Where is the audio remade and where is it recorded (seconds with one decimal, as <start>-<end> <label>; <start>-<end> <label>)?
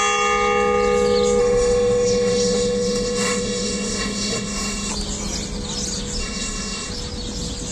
0.0-1.4 recorded; 1.4-4.9 remade; 4.9-6.2 recorded; 6.2-6.9 remade; 6.9-7.7 recorded